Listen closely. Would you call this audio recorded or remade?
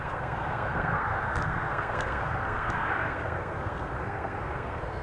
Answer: remade